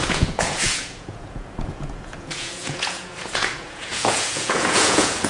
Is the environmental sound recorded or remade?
remade